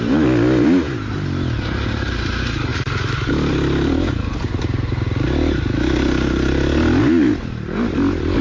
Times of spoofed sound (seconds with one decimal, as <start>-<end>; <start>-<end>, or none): none